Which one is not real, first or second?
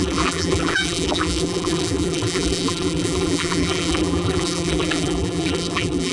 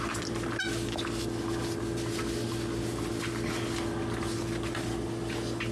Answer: first